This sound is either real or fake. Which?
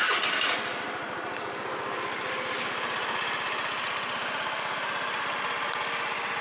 real